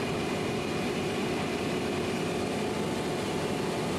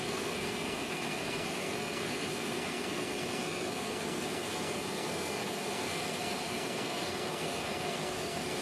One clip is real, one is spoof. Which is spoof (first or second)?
second